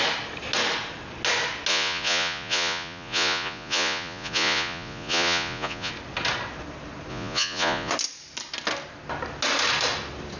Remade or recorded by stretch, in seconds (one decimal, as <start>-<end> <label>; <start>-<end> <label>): 0.0-1.7 recorded; 1.7-5.9 remade; 5.9-7.1 recorded; 7.1-7.9 remade; 7.9-10.4 recorded